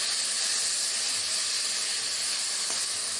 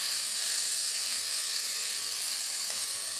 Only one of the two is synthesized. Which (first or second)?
second